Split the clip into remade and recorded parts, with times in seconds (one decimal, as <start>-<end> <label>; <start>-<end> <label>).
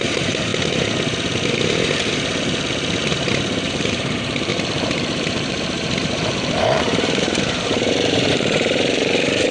0.0-0.5 remade; 0.5-3.1 recorded; 3.1-9.5 remade